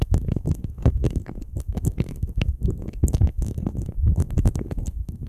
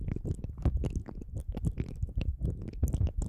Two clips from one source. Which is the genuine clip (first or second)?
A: second